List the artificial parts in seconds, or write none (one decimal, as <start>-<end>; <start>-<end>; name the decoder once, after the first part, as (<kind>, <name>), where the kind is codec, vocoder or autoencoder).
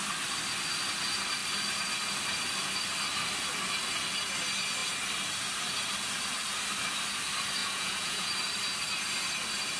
7.6-8.3 (vocoder, Vocos)